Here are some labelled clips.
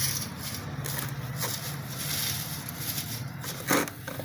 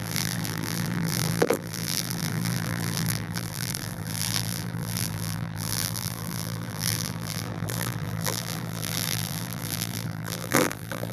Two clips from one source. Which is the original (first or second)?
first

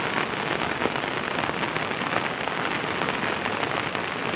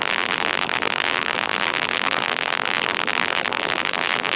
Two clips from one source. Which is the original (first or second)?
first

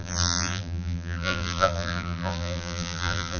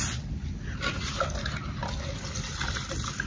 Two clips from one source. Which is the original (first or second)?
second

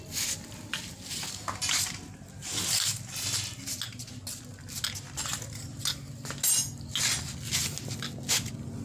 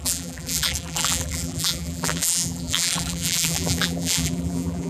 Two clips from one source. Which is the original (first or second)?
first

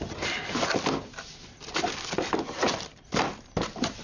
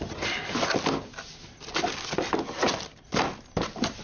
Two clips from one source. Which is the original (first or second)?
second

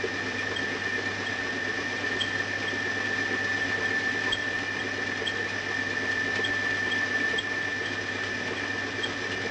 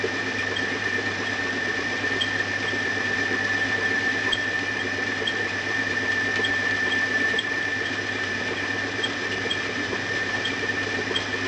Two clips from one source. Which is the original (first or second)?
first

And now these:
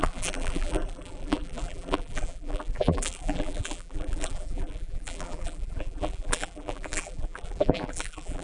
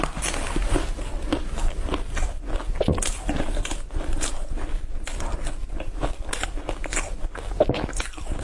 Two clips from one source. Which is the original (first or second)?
second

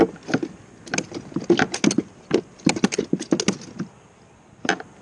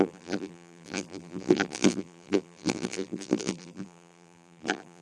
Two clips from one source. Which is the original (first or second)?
first